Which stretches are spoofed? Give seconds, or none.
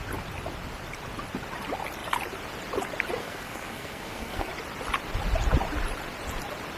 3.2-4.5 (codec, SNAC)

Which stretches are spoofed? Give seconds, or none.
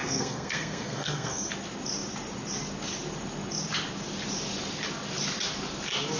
0.0-1.5 (codec, SNAC)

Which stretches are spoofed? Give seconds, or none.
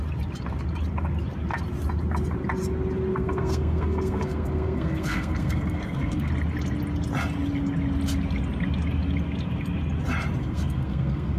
3.1-6.3 (codec, SNAC); 10.4-11.4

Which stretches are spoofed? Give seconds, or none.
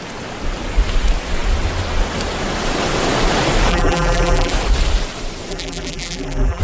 3.7-4.5 (vocoder, BigVGAN v2); 5.5-6.6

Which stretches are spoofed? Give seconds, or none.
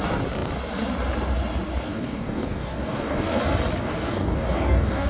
1.9-3.4 (codec, DAC); 3.8-5.1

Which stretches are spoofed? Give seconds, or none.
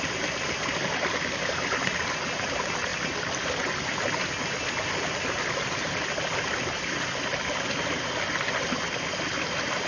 none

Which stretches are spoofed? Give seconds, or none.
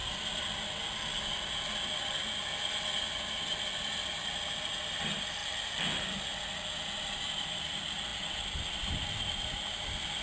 5.4-6.3 (vocoder, BigVGAN v2)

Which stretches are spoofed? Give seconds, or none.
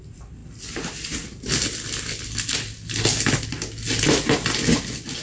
none